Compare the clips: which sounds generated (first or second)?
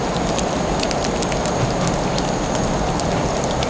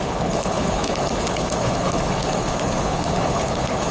second